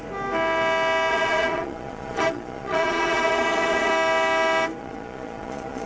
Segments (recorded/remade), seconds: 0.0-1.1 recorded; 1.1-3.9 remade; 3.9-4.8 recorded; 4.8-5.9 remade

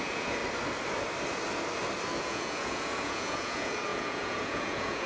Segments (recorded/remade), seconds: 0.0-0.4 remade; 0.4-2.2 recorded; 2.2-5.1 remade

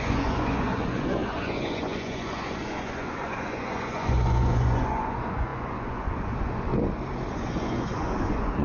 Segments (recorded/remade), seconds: 0.0-6.7 remade; 6.7-7.3 recorded; 7.3-8.6 remade

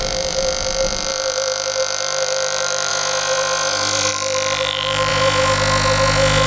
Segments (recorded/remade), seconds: 0.0-2.9 recorded; 2.9-4.1 remade; 4.1-5.1 recorded; 5.1-6.5 remade

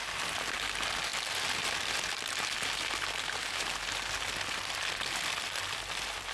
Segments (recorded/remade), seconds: 0.0-6.3 recorded